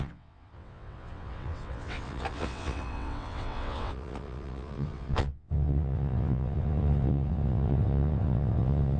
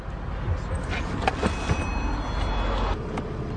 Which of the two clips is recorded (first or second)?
second